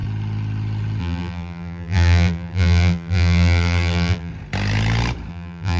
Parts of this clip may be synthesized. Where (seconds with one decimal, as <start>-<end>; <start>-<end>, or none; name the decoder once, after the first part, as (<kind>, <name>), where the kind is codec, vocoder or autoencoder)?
1.0-4.3 (vocoder, BigVGAN v2); 5.3-5.8